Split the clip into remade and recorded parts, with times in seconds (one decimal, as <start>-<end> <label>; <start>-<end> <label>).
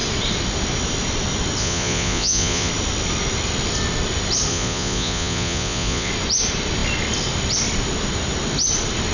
0.0-1.6 recorded; 1.6-2.7 remade; 2.7-4.5 recorded; 4.5-6.1 remade; 6.1-9.1 recorded